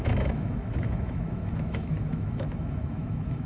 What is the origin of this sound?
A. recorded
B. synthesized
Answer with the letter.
B